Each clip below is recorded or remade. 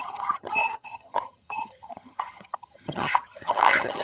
remade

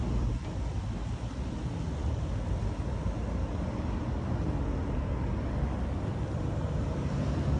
recorded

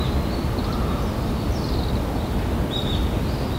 recorded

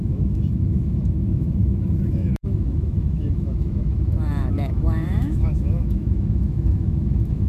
remade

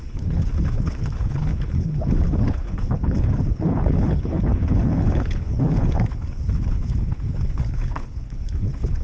remade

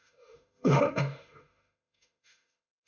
remade